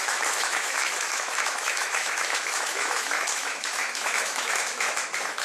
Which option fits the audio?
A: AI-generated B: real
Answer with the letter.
A